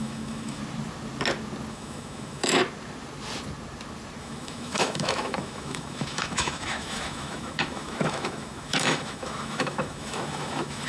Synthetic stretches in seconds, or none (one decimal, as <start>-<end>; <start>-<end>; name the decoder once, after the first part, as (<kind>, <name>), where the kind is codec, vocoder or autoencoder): 0.0-0.6 (autoencoder, DAC-VAE); 1.7-2.6; 4.2-10.9